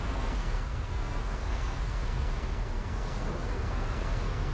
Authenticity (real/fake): fake